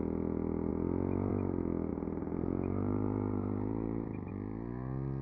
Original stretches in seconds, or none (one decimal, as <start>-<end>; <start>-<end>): 0.0-1.9; 4.3-5.2